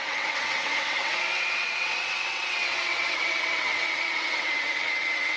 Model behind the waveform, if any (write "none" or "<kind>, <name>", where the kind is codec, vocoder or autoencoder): vocoder, WaveNeXt